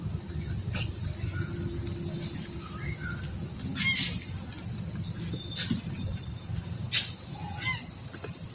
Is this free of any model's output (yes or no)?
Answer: yes